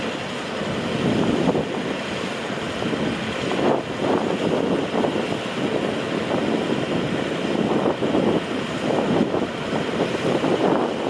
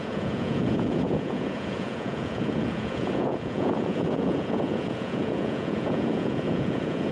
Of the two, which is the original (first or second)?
first